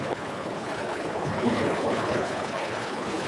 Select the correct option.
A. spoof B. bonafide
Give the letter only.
A